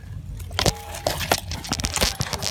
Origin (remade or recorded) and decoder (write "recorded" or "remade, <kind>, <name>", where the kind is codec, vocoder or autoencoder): recorded